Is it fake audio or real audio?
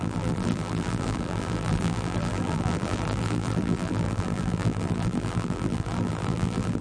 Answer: fake